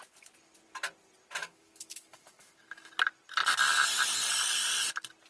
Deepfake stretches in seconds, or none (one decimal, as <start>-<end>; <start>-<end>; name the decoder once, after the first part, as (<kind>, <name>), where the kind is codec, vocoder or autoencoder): 1.4-2.9 (autoencoder, DAC-VAE)